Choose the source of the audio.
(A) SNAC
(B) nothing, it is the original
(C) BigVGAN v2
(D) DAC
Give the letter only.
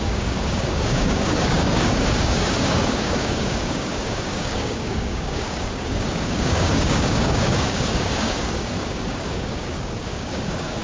D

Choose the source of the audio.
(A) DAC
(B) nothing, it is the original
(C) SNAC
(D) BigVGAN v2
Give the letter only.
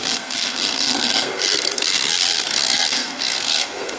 C